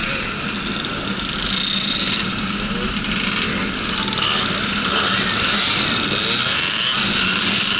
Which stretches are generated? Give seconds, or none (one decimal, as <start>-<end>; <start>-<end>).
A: none